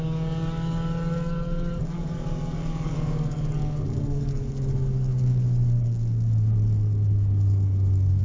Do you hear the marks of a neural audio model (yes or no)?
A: yes